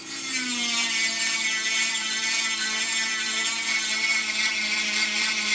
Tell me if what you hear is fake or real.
fake